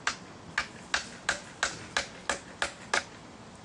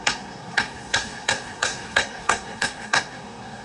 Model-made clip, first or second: second